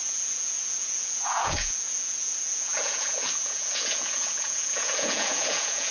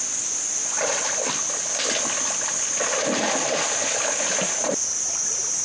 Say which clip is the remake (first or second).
first